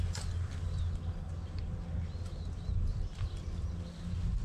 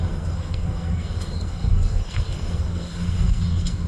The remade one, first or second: second